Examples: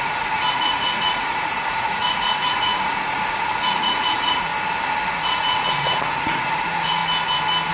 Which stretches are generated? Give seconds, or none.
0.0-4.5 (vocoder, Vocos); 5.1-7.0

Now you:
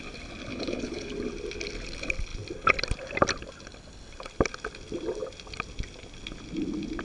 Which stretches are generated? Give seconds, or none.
0.5-1.1 (codec, HILCodec)

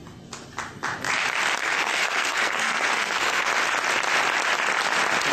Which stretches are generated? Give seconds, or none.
1.6-3.5 (codec, SNAC)

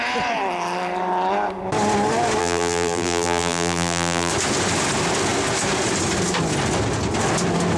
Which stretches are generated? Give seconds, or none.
2.4-4.3 (vocoder, BigVGAN v2)

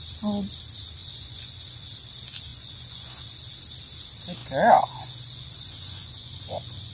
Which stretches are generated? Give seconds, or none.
1.0-1.8 (vocoder, Vocos); 2.5-3.2; 4.4-6.9